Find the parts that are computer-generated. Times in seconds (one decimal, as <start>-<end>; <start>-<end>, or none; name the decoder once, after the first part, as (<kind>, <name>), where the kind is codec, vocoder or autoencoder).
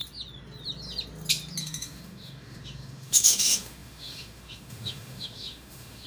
1.6-6.1 (autoencoder, DAC-VAE)